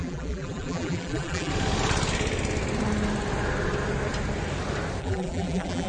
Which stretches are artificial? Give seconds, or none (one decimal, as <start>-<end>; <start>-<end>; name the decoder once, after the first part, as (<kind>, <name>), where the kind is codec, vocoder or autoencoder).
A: 0.0-1.5 (vocoder, BigVGAN v2); 5.0-5.9